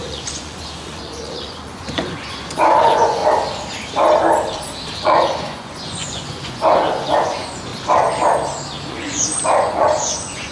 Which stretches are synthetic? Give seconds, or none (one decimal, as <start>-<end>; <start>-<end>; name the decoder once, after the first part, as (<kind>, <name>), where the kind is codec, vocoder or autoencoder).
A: 0.0-3.2 (vocoder, Vocos); 5.0-7.7; 8.9-10.5